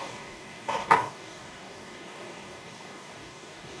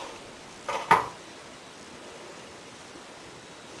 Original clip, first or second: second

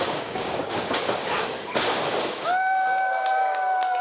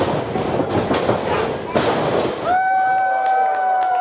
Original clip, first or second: second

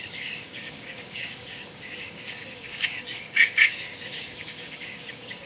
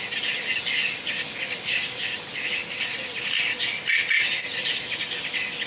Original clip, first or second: second